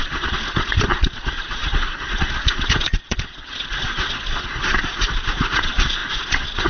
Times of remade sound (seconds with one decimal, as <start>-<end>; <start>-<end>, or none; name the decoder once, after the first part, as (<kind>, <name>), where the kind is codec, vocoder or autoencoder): 0.0-6.7 (vocoder, Vocos)